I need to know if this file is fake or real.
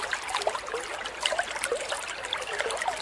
real